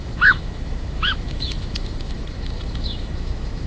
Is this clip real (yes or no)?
no